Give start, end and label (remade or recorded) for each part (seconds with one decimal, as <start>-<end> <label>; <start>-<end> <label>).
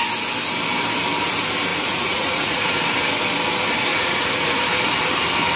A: 0.0-1.7 recorded; 1.7-2.7 remade; 2.7-3.9 recorded; 3.9-4.6 remade; 4.6-5.6 recorded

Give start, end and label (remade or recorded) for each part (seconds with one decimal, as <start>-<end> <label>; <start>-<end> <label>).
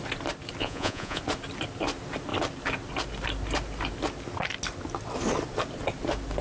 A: 0.0-0.6 recorded; 0.6-1.2 remade; 1.2-6.4 recorded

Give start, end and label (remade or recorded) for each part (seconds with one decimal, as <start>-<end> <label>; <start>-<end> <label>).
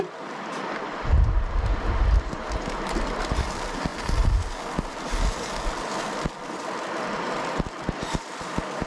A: 0.0-8.9 recorded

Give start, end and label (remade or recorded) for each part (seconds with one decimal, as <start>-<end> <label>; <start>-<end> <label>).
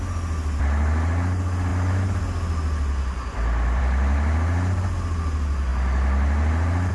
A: 0.0-6.9 recorded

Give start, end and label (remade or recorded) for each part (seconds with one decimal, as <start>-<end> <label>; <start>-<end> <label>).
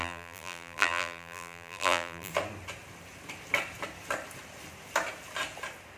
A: 0.0-2.3 remade; 2.3-6.0 recorded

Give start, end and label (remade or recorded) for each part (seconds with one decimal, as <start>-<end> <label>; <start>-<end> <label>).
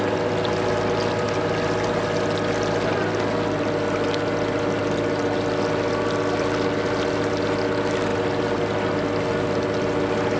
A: 0.0-10.4 recorded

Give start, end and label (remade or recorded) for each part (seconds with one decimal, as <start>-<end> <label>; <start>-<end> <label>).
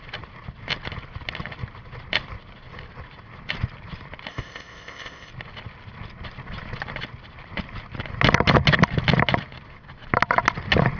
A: 0.0-4.3 recorded; 4.3-5.3 remade; 5.3-11.0 recorded